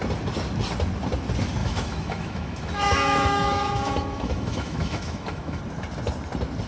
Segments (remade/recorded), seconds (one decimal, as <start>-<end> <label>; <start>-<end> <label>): 0.0-1.6 recorded; 1.6-5.6 remade; 5.6-6.7 recorded